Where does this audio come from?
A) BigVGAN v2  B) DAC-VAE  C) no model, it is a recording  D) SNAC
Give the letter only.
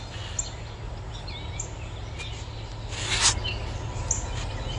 C